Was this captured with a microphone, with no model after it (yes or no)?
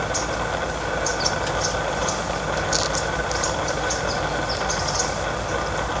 yes